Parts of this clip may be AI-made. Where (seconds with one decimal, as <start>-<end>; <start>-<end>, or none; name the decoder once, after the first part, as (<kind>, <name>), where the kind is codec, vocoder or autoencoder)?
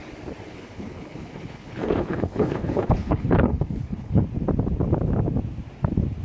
0.5-4.2 (codec, HILCodec)